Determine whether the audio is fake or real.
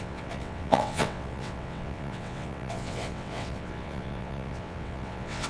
fake